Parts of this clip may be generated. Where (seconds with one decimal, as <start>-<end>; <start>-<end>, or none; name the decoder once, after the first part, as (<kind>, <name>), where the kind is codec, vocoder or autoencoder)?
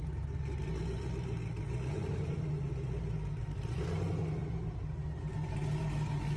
none